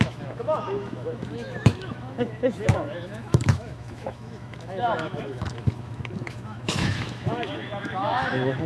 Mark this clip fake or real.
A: fake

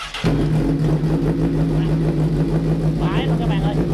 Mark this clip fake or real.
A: real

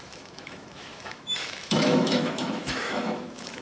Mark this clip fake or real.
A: fake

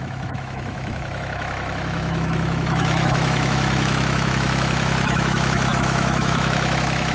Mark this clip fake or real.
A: fake